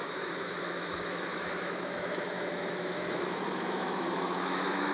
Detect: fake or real fake